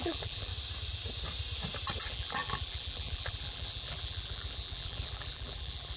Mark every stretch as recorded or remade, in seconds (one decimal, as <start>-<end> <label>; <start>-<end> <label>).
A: 0.0-0.5 remade; 0.5-2.0 recorded; 2.0-6.0 remade